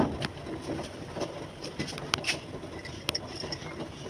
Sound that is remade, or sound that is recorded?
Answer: recorded